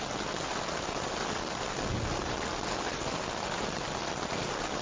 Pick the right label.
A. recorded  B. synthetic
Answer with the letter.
A